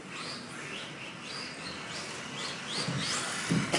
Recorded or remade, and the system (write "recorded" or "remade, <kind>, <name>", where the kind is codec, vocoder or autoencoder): recorded